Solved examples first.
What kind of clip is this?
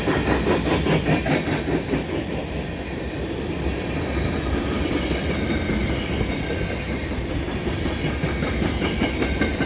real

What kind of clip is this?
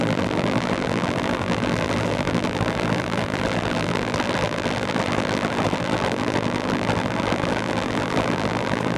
fake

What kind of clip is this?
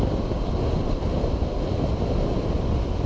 real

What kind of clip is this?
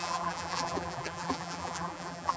fake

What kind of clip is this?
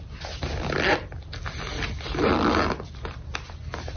real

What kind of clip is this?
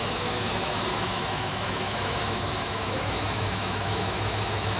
fake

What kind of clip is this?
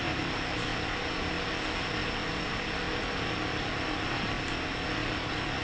real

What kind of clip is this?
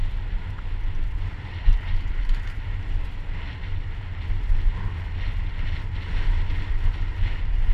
real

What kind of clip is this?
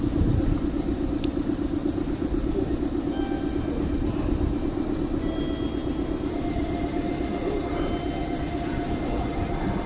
real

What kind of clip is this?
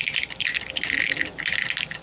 real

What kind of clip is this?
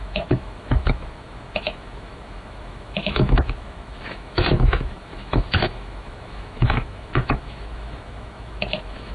fake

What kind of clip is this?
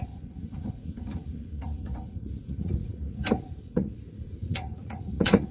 fake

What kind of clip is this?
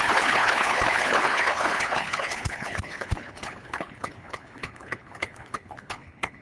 fake